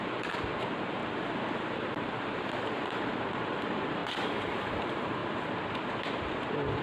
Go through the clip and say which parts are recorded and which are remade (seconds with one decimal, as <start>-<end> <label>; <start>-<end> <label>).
0.0-1.0 remade; 1.0-2.0 recorded; 2.0-4.0 remade; 4.0-4.5 recorded; 4.5-5.2 remade; 5.2-6.2 recorded; 6.2-6.8 remade